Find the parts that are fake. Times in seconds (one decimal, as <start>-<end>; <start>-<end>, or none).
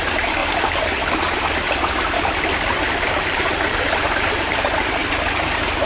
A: 0.0-0.4; 2.7-5.0